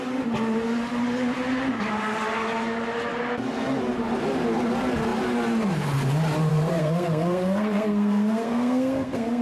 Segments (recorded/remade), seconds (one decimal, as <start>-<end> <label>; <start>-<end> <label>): 0.0-6.5 recorded; 6.5-9.4 remade